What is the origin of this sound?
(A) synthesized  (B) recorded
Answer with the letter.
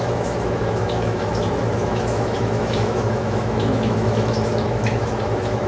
A